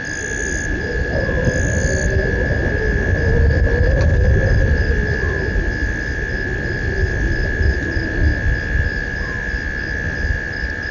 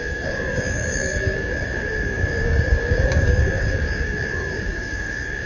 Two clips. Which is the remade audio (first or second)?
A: second